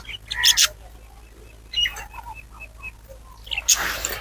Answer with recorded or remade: recorded